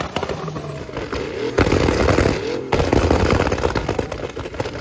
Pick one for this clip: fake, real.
real